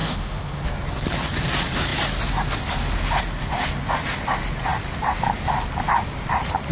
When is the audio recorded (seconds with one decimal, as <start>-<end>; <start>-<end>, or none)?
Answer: 0.6-6.7